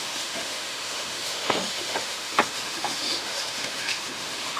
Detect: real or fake fake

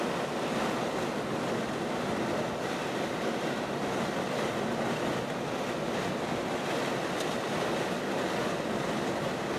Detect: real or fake real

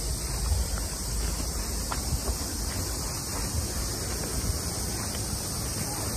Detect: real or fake real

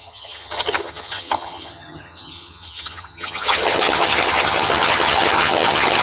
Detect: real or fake fake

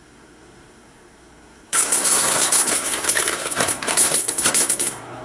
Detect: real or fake fake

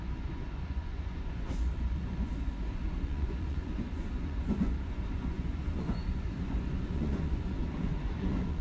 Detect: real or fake fake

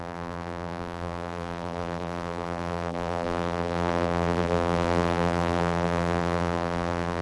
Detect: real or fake fake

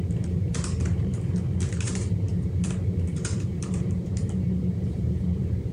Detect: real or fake fake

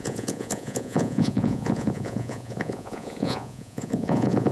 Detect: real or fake fake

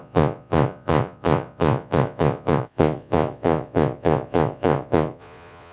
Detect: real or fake fake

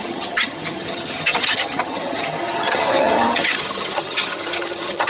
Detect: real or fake fake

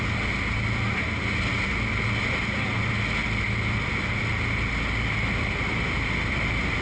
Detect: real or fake real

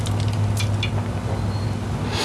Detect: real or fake real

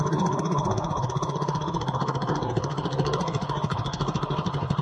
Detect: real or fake fake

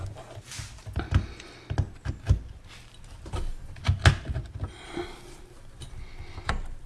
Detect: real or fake real